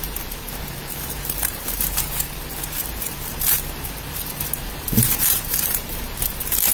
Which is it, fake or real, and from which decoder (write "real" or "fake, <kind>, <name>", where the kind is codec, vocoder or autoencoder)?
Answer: fake, vocoder, BigVGAN v2